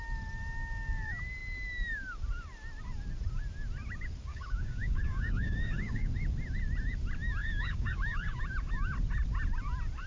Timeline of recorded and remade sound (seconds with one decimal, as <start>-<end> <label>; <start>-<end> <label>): 0.0-4.3 recorded; 4.3-6.1 remade; 6.1-7.4 recorded; 7.4-8.4 remade; 8.4-10.1 recorded